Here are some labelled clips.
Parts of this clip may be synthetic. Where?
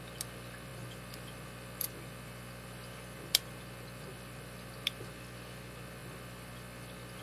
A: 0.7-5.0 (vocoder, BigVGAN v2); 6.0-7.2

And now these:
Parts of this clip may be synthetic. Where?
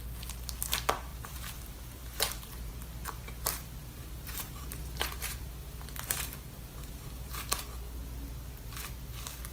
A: 1.1-2.7 (vocoder, BigVGAN v2); 3.8-7.6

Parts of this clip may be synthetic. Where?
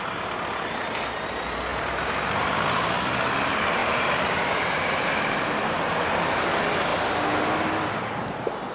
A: 1.7-2.9 (vocoder, BigVGAN v2); 3.8-6.4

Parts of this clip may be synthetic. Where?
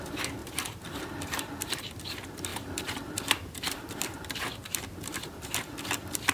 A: 0.4-1.0 (vocoder, BigVGAN v2); 2.5-6.3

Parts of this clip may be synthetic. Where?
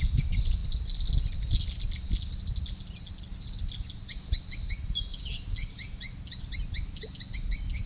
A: none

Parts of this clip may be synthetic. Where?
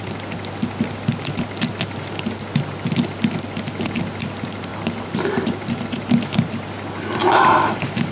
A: 4.7-6.5 (vocoder, BigVGAN v2); 7.2-8.1